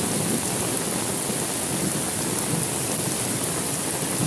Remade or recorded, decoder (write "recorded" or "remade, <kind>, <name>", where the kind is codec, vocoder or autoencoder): recorded